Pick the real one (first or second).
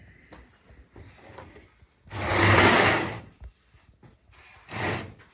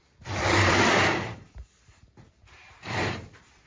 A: first